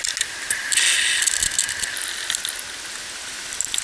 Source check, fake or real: real